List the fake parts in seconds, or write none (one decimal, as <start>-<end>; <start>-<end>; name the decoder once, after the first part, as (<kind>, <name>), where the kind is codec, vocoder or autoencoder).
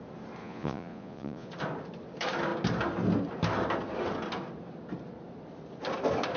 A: 0.4-1.5 (vocoder, Vocos)